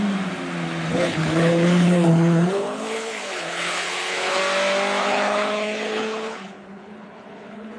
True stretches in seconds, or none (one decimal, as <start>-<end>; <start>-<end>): 0.0-0.9; 4.4-5.0